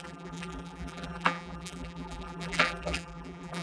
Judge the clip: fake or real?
fake